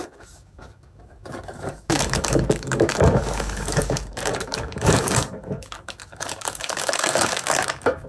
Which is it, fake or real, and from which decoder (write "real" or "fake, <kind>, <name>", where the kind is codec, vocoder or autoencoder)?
fake, codec, DAC